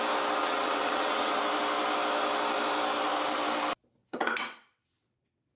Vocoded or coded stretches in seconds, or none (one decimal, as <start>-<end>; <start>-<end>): 0.4-1.4; 4.0-5.6